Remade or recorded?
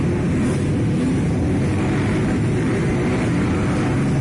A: recorded